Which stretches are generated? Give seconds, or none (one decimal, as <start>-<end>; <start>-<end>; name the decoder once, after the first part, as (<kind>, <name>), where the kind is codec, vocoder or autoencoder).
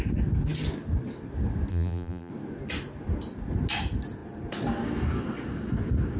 1.7-2.3 (vocoder, BigVGAN v2)